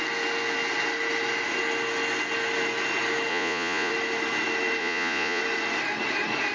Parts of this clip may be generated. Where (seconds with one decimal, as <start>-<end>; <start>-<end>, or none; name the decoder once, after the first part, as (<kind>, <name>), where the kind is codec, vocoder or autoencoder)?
3.3-3.9 (vocoder, Vocos); 4.8-5.4

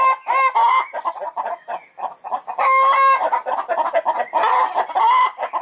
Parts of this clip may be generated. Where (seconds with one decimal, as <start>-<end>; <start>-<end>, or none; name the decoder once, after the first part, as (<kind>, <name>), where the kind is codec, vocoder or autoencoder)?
3.3-4.9 (vocoder, BigVGAN v2)